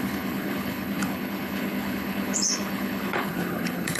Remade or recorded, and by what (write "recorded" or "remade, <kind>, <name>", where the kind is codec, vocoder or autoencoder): remade, codec, HILCodec